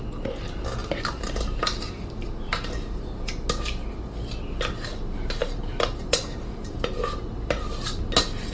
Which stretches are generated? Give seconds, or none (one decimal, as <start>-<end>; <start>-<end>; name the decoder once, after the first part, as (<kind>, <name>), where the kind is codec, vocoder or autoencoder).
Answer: 0.8-3.3 (vocoder, BigVGAN v2); 5.4-7.0